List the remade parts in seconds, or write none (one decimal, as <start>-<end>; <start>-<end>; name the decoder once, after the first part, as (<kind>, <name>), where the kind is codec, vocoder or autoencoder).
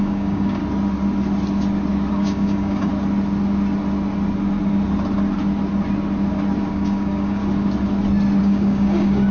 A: 0.0-0.6 (codec, DAC); 2.1-2.9; 6.7-7.4; 8.4-9.3